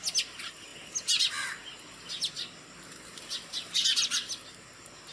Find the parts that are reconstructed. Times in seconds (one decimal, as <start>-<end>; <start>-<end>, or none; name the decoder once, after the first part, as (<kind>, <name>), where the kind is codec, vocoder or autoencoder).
none